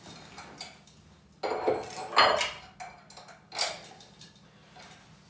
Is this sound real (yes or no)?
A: yes